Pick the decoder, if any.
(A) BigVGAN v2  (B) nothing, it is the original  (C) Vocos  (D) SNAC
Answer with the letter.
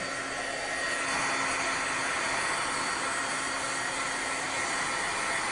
B